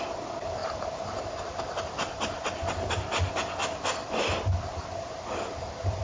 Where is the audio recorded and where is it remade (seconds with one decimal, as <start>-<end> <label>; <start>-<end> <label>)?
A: 0.0-6.0 recorded